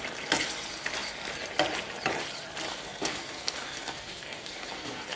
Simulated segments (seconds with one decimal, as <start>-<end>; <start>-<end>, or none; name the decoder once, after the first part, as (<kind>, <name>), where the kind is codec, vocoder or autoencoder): 2.7-5.2 (codec, SNAC)